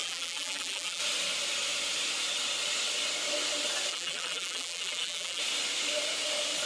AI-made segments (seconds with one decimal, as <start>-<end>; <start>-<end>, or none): 0.0-1.0; 3.9-5.4